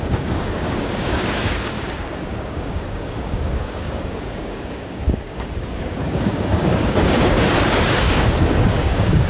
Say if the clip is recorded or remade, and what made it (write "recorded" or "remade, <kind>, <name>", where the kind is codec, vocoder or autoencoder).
remade, codec, DAC